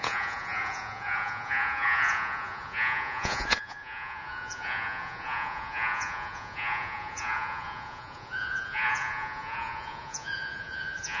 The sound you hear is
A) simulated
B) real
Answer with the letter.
A